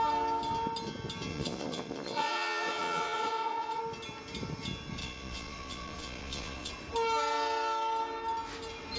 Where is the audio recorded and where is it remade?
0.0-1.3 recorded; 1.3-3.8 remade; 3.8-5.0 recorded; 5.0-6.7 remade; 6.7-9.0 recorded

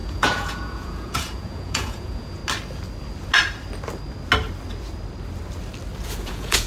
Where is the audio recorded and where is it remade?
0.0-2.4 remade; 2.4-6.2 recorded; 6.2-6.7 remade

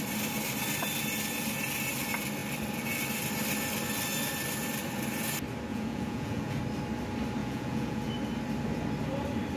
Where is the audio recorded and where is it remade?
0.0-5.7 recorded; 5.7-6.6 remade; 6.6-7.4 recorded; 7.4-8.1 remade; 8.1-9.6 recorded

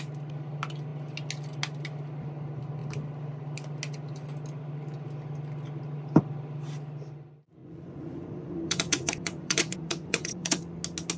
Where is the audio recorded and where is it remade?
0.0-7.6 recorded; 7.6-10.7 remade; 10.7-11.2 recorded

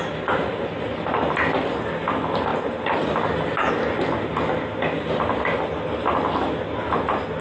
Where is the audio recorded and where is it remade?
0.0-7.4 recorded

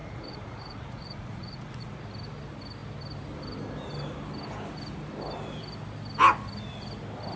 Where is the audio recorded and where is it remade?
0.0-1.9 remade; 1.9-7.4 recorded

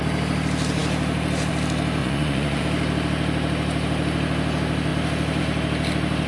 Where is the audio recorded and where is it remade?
0.0-2.0 recorded; 2.0-2.6 remade; 2.6-6.3 recorded